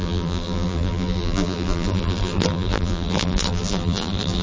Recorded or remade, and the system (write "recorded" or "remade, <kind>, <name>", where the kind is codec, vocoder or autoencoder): remade, vocoder, BigVGAN v2